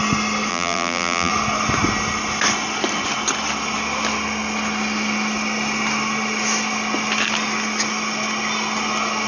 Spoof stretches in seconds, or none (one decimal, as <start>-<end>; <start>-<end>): 0.5-1.3